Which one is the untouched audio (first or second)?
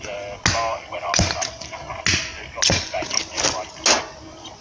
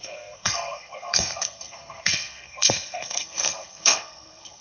first